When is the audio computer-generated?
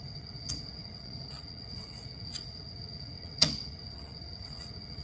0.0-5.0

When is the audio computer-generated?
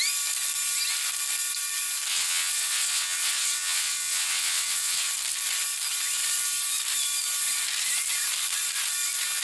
2.1-5.1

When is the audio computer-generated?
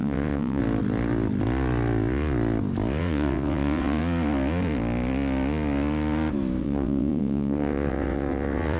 0.0-0.6; 3.0-4.0; 6.6-8.8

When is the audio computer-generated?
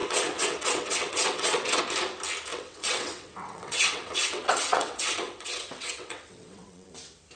0.0-1.8; 2.5-6.9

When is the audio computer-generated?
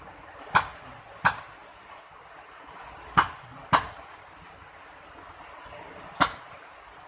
none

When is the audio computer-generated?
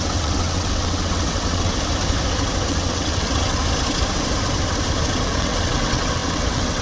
0.0-1.7; 2.7-3.6; 5.3-6.8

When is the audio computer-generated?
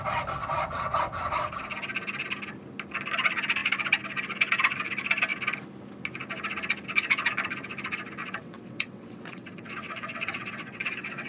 8.2-11.3